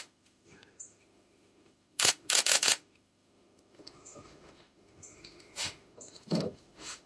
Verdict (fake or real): fake